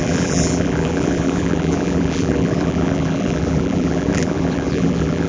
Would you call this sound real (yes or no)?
no